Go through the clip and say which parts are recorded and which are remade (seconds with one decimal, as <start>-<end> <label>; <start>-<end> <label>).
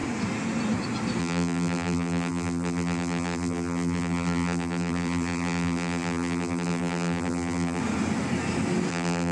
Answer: 0.0-1.2 recorded; 1.2-7.8 remade; 7.8-8.9 recorded; 8.9-9.3 remade